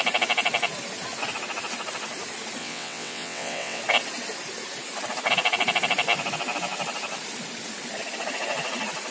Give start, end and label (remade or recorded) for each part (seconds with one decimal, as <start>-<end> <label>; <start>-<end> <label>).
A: 0.0-2.6 recorded; 2.6-3.8 remade; 3.8-9.1 recorded